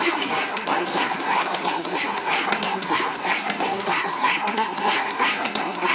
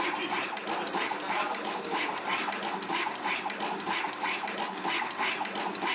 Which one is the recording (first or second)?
second